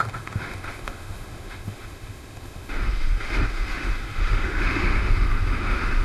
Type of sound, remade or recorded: remade